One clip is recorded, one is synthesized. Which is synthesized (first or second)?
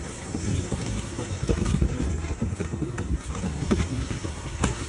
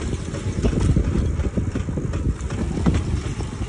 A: first